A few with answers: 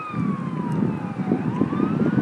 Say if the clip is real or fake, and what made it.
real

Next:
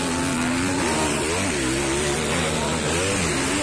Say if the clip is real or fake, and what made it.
real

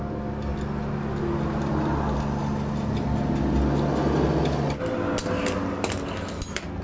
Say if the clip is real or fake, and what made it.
real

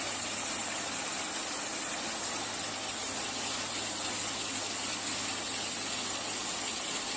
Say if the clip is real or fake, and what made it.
real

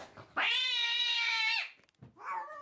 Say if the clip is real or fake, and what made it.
real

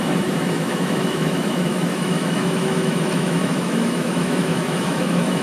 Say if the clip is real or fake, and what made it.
fake, autoencoder, DAC-VAE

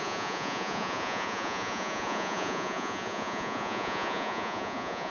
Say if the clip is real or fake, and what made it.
fake, vocoder, Vocos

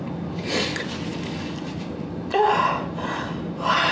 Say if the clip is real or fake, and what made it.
real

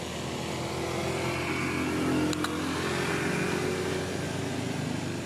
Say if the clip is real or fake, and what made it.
real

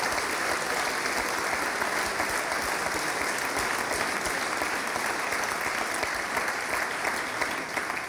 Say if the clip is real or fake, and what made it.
real